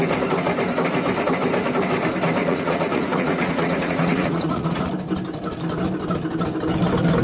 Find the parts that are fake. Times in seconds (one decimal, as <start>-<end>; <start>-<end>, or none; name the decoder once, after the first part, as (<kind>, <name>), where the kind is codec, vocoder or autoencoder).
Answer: 2.4-4.9 (vocoder, Vocos)